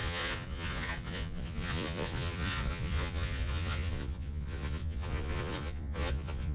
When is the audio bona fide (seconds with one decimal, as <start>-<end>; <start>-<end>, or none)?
none

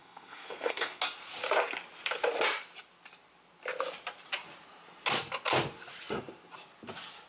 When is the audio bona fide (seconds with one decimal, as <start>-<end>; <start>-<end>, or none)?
1.0-7.3

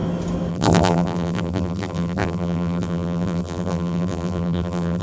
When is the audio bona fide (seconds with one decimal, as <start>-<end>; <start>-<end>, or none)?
0.0-0.5

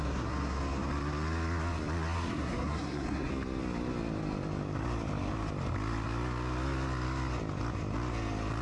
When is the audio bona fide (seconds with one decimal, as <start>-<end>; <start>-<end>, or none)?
0.6-2.3; 3.3-8.6

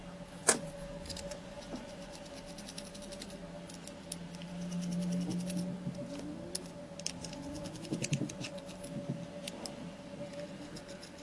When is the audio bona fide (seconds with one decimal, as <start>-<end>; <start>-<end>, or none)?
0.0-0.4; 2.2-7.2; 8.6-11.2